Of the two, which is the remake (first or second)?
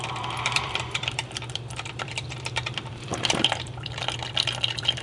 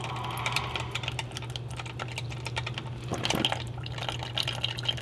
first